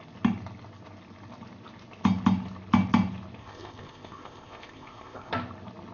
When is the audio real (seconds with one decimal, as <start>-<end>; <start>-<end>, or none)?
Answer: 0.0-3.4; 5.3-5.9